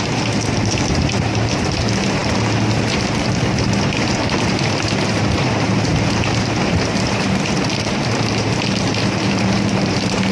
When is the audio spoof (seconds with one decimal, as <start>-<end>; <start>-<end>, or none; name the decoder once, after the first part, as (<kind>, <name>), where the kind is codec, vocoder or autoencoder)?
0.0-5.9 (vocoder, BigVGAN v2); 6.4-10.3